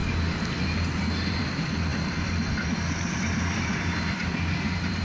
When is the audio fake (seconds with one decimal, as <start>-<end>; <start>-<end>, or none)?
1.3-5.0